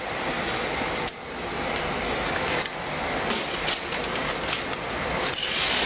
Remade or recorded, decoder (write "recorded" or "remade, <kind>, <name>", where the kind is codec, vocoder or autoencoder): recorded